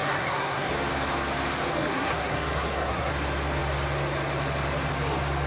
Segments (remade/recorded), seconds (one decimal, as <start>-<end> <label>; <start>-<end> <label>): 0.0-0.7 remade; 0.7-1.7 recorded; 1.7-3.1 remade; 3.1-5.5 recorded